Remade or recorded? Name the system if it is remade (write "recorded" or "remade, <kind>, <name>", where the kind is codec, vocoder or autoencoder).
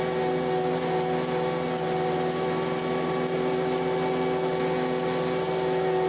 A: recorded